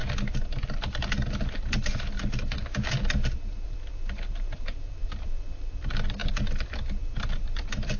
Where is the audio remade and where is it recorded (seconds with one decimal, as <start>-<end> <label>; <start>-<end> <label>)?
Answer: 0.0-8.0 recorded